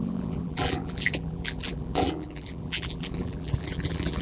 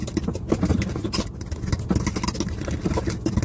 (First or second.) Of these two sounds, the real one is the second